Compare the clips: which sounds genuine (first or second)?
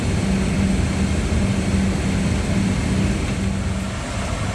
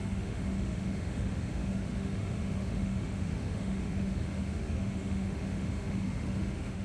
first